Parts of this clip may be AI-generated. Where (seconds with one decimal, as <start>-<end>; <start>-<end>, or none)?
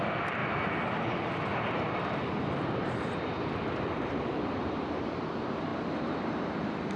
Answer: 0.0-0.4; 3.4-5.7; 6.3-7.0